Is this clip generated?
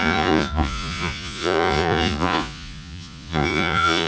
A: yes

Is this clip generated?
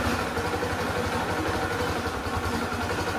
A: no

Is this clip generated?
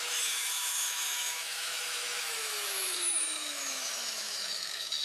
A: yes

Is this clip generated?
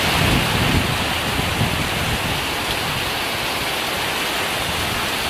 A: no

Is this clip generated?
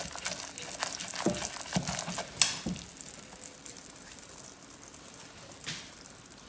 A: no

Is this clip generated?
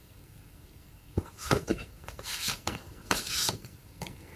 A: yes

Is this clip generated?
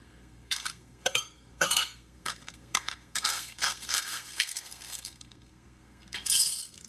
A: yes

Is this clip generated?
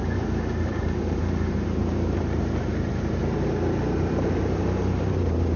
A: yes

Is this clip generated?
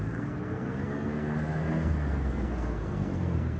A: yes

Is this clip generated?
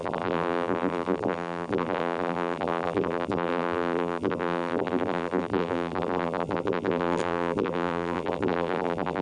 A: yes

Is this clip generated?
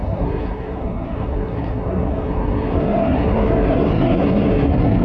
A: yes